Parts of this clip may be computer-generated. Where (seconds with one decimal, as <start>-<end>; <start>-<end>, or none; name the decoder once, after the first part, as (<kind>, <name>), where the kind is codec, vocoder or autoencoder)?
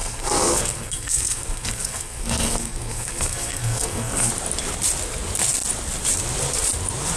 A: 0.0-4.3 (codec, SNAC)